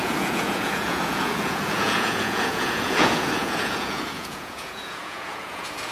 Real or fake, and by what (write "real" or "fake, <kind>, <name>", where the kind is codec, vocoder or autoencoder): fake, vocoder, Vocos